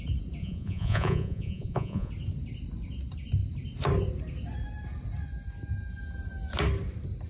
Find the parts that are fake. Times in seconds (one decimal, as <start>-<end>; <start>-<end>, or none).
0.4-2.1